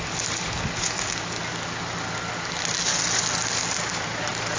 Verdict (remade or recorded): recorded